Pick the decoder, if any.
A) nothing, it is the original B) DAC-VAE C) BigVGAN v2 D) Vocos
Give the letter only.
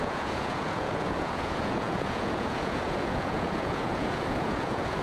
D